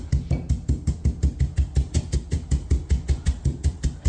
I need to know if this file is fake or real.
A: real